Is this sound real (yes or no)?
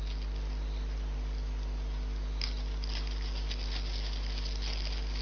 yes